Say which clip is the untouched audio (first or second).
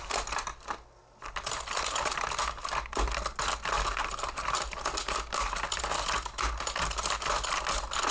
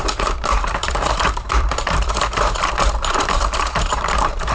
first